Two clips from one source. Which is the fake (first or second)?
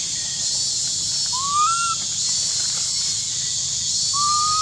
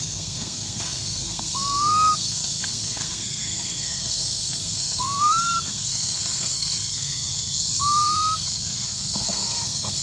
second